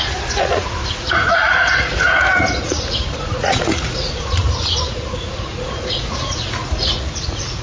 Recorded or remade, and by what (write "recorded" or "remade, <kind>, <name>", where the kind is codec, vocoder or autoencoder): remade, vocoder, Vocos